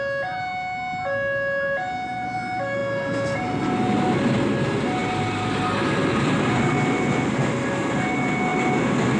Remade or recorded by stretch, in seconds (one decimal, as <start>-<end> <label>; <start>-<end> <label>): 0.0-9.2 recorded